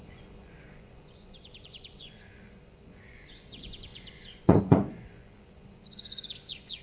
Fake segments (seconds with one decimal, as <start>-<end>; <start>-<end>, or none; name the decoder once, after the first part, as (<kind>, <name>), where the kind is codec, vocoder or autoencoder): 0.0-6.8 (vocoder, Vocos)